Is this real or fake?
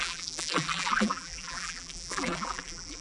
fake